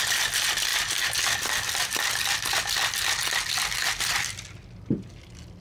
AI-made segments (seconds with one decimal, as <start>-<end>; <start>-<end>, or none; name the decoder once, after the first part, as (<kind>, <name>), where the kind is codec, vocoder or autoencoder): none